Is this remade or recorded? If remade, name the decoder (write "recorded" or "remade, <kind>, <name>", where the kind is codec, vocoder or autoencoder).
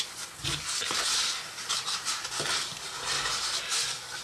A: recorded